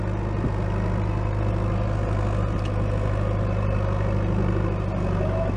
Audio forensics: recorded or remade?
recorded